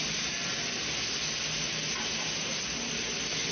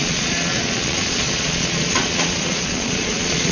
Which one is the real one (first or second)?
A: first